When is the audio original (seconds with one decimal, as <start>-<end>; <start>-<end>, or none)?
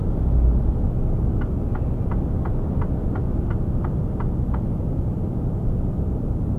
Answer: 0.0-6.6